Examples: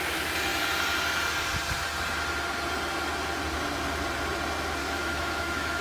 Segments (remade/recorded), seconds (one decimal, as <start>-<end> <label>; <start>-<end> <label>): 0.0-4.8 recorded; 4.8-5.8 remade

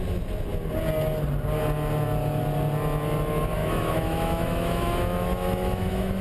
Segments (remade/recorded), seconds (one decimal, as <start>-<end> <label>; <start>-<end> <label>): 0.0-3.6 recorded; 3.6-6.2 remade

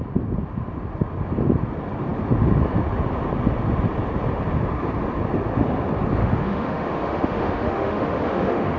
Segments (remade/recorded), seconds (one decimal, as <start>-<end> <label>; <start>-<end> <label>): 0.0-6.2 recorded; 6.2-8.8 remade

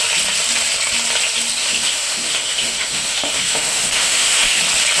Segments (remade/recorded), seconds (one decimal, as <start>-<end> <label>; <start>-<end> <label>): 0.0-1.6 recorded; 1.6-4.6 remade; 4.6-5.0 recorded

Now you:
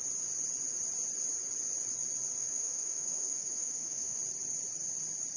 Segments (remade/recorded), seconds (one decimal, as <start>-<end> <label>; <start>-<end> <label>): 0.0-2.4 recorded; 2.4-4.2 remade; 4.2-5.4 recorded

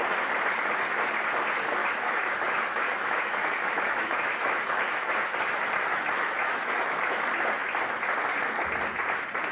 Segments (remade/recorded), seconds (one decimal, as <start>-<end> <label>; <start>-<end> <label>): 0.0-1.8 recorded; 1.8-5.1 remade; 5.1-5.9 recorded; 5.9-7.0 remade; 7.0-9.5 recorded